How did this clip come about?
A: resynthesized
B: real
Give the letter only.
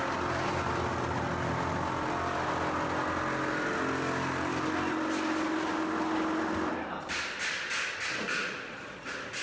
B